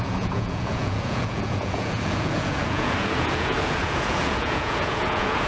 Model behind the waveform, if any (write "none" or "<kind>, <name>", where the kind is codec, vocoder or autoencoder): vocoder, Vocos